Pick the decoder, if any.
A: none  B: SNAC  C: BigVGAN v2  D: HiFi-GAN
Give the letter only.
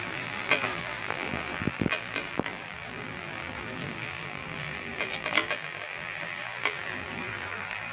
C